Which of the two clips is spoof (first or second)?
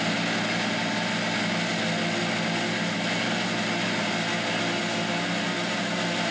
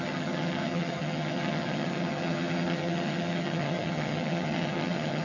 second